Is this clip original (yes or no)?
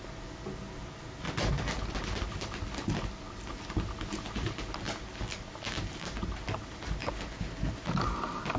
yes